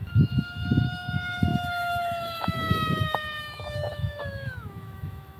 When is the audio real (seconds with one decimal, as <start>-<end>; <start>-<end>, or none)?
none